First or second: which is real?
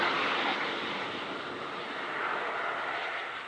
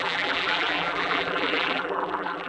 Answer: first